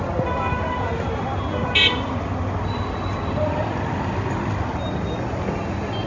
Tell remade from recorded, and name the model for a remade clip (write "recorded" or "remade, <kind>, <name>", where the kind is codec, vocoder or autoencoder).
recorded